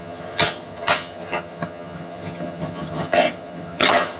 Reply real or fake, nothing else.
fake